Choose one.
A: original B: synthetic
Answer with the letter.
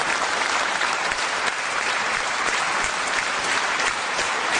B